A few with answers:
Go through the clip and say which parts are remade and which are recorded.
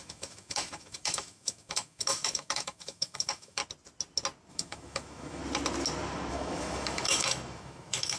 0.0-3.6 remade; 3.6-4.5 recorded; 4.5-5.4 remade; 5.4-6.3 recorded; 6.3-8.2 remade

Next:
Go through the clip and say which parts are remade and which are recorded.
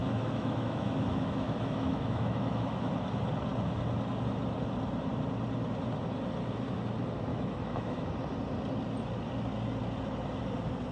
0.0-2.9 remade; 2.9-7.3 recorded; 7.3-8.1 remade; 8.1-10.9 recorded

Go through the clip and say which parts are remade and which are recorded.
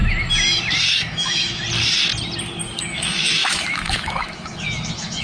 0.0-1.0 recorded; 1.0-1.6 remade; 1.6-2.8 recorded; 2.8-5.2 remade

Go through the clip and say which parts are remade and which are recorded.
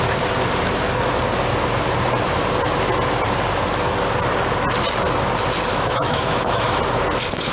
0.0-5.7 recorded; 5.7-6.8 remade; 6.8-7.5 recorded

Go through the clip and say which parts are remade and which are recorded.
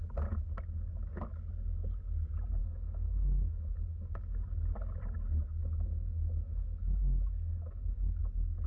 0.0-2.6 recorded; 2.6-4.2 remade; 4.2-5.6 recorded; 5.6-8.2 remade; 8.2-8.7 recorded